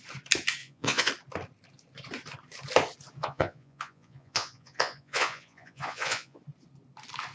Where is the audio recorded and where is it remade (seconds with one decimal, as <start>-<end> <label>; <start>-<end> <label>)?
0.0-0.6 recorded; 0.6-1.1 remade; 1.1-3.2 recorded; 3.2-6.4 remade; 6.4-7.3 recorded

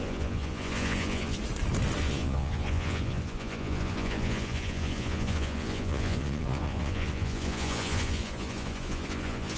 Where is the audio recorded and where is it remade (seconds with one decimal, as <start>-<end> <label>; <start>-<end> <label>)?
0.0-1.4 remade; 1.4-2.0 recorded; 2.0-9.6 remade

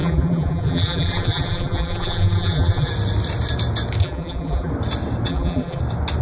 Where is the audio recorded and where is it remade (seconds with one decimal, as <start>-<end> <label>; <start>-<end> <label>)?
0.0-2.9 remade; 2.9-4.0 recorded; 4.0-4.7 remade; 4.7-5.3 recorded; 5.3-5.8 remade; 5.8-6.2 recorded

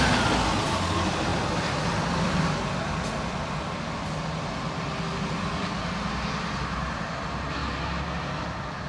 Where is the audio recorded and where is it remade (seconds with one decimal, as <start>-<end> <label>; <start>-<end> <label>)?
0.0-8.9 recorded

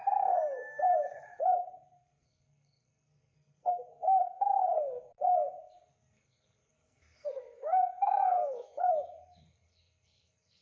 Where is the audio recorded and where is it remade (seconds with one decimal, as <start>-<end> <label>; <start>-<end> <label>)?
0.0-10.6 remade